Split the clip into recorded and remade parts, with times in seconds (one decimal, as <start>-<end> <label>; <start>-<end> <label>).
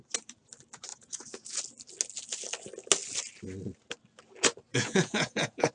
0.0-0.9 recorded; 0.9-1.6 remade; 1.6-4.7 recorded; 4.7-5.7 remade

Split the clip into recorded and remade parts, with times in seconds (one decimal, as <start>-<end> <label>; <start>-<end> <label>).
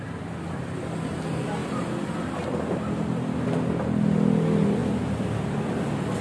0.0-6.2 recorded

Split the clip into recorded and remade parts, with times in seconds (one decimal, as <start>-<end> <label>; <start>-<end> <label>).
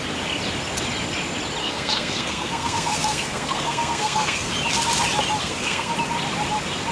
0.0-1.6 recorded; 1.6-4.5 remade; 4.5-5.4 recorded; 5.4-5.9 remade; 5.9-6.9 recorded